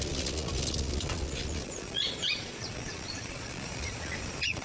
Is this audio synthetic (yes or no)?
yes